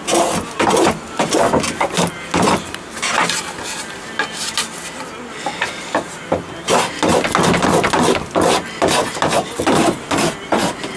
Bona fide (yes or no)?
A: yes